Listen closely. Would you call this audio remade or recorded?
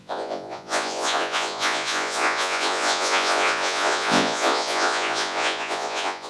remade